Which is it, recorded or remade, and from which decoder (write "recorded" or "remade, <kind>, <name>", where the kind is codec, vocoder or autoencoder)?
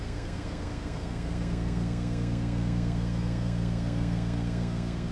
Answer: remade, codec, SNAC